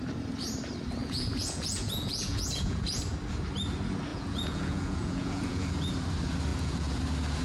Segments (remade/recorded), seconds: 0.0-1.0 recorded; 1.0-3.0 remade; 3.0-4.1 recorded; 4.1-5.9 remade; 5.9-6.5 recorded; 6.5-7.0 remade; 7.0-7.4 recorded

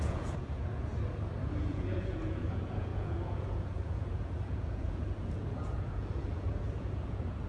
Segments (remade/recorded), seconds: 0.0-0.9 remade; 0.9-1.6 recorded; 1.6-7.5 remade

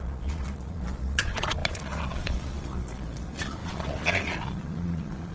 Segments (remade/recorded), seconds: 0.0-5.3 remade

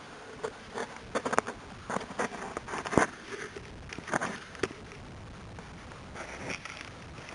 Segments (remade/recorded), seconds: 0.0-7.3 recorded